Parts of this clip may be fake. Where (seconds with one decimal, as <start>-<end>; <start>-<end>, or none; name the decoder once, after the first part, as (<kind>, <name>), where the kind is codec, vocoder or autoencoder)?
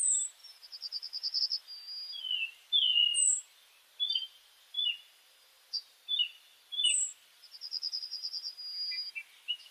none